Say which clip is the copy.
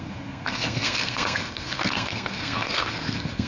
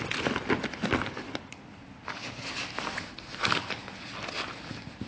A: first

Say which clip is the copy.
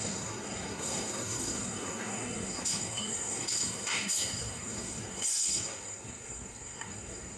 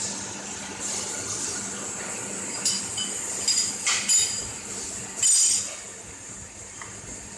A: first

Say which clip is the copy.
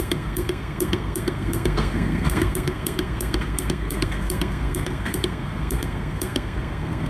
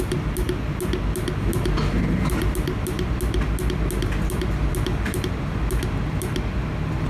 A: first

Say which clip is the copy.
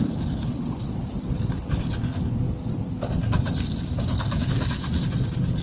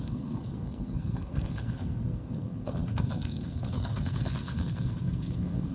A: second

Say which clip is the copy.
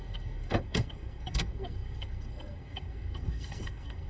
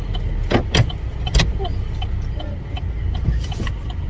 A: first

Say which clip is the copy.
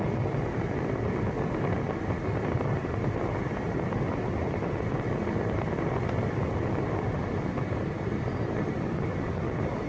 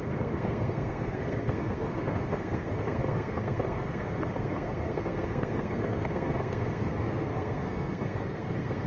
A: second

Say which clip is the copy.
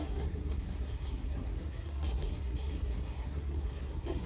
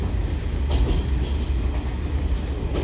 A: first